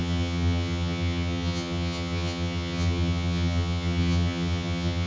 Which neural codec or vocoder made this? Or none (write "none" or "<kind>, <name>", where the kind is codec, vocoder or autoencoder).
vocoder, HiFi-GAN